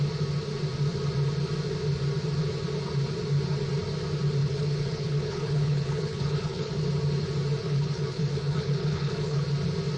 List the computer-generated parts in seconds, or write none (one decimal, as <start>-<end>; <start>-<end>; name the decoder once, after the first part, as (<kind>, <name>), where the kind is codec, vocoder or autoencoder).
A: 4.4-6.8 (codec, HILCodec); 7.6-9.4